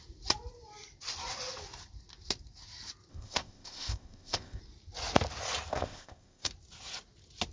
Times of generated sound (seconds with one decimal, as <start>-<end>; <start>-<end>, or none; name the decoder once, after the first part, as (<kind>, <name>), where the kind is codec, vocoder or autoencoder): 3.1-4.6 (codec, ZipCodec); 5.7-6.5